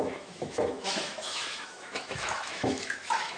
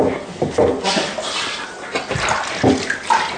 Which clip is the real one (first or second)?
second